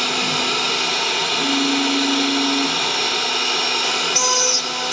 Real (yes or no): yes